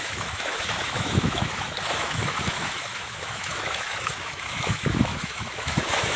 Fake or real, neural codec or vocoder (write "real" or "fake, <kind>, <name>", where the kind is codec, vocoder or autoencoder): fake, autoencoder, DAC-VAE